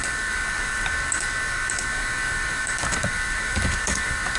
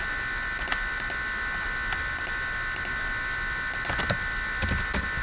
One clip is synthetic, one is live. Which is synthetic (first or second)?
first